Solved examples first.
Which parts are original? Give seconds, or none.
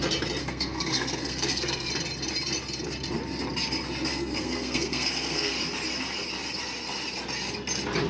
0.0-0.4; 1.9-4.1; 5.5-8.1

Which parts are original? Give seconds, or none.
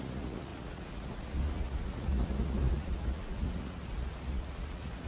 none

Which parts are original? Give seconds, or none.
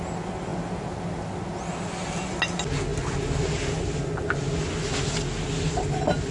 0.0-6.3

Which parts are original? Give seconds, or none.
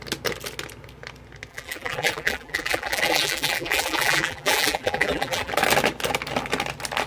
0.0-1.5; 5.5-7.1